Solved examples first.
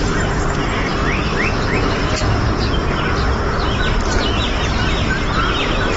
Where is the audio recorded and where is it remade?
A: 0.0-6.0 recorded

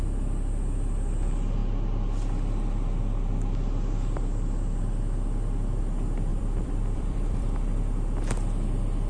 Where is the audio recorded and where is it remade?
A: 0.0-6.3 recorded; 6.3-7.8 remade; 7.8-9.1 recorded